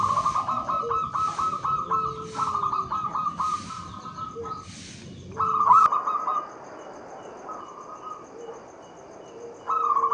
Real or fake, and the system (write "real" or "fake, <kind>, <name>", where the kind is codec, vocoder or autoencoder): real